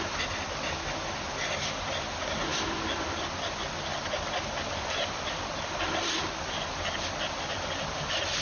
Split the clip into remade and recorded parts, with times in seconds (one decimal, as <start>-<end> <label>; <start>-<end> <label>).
0.0-8.4 recorded